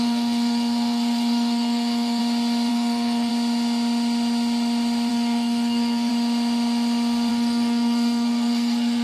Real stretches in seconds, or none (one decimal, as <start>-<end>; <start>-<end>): 2.2-2.7; 3.3-5.1; 6.1-7.3

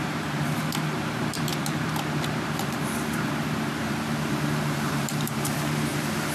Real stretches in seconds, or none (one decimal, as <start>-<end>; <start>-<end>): none

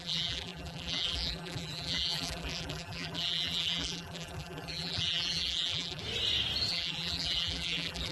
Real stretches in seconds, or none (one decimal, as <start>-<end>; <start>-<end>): 6.0-6.7

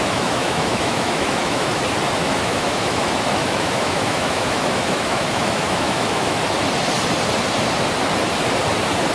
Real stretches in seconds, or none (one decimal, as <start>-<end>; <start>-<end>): 1.8-2.2; 6.4-9.1

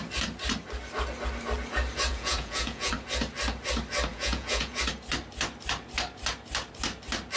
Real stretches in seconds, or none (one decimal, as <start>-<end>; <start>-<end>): 0.0-2.1; 2.9-4.1; 4.8-7.4